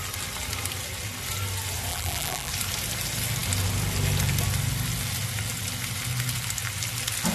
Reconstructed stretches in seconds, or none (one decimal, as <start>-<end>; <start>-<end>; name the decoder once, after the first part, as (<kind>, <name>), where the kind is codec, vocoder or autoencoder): 1.9-2.5 (vocoder, BigVGAN v2)